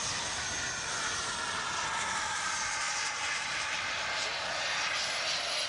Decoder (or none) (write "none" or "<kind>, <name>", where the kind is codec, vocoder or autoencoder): none